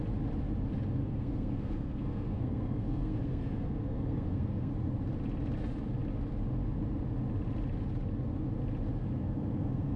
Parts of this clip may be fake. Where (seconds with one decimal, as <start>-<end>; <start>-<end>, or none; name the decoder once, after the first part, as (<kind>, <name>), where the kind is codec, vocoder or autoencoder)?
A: 1.0-4.7 (codec, SNAC); 9.2-10.0